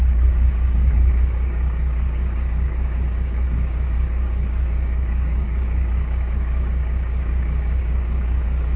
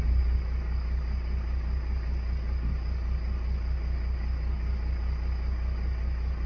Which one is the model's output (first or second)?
first